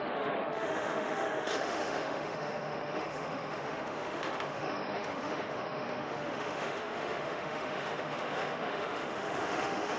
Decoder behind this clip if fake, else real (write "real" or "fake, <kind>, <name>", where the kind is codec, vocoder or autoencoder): fake, autoencoder, DAC-VAE